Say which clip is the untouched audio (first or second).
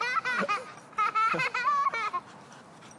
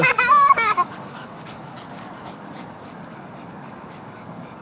first